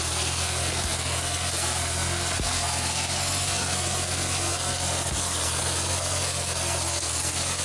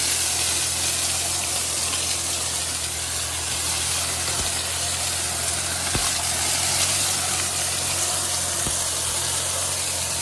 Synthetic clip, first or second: first